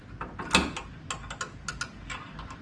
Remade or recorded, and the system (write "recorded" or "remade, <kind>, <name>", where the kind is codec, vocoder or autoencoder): recorded